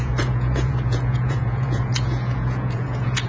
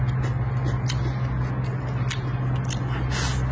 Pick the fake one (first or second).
first